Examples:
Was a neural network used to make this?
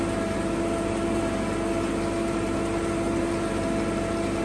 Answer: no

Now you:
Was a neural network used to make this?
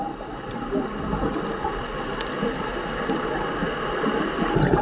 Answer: no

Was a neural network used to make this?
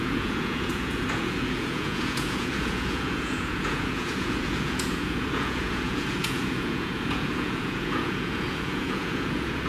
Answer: yes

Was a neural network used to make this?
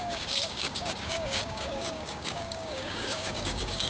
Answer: yes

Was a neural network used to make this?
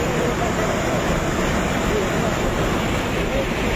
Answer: yes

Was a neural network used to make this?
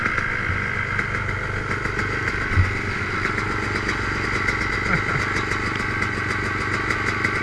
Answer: no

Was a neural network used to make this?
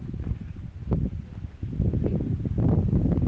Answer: no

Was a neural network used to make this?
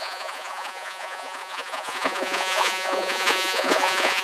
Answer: yes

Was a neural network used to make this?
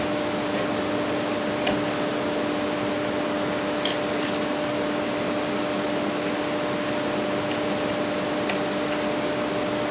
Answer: no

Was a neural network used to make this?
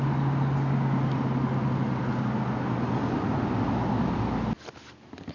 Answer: no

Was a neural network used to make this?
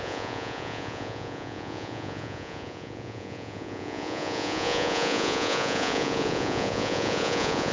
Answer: yes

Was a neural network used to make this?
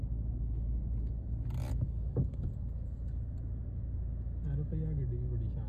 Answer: no